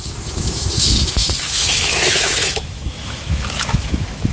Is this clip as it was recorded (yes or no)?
no